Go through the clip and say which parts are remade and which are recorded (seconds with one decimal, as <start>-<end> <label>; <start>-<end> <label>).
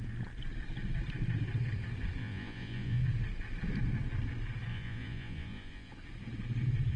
0.0-2.2 recorded; 2.2-3.0 remade; 3.0-4.7 recorded; 4.7-5.9 remade; 5.9-7.0 recorded